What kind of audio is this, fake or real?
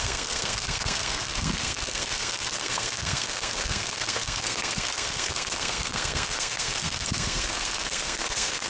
fake